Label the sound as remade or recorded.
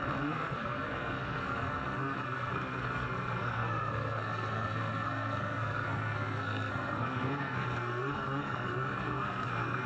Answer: remade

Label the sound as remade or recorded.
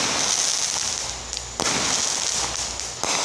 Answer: recorded